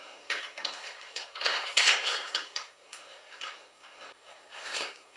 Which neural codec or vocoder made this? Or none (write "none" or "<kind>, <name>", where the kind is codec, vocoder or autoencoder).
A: codec, SNAC